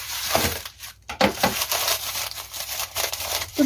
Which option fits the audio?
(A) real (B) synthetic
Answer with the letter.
B